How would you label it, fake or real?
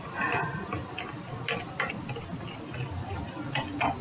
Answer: real